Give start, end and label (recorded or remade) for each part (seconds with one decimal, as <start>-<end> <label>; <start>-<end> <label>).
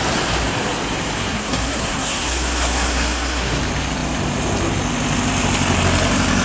0.0-1.2 recorded; 1.2-3.6 remade; 3.6-6.4 recorded